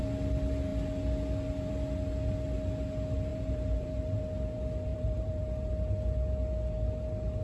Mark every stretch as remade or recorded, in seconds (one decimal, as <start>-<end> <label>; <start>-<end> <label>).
0.0-3.3 recorded; 3.3-4.2 remade; 4.2-4.9 recorded; 4.9-5.4 remade; 5.4-7.4 recorded